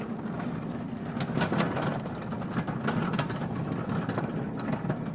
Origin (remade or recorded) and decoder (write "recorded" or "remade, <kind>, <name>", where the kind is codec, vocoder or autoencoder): recorded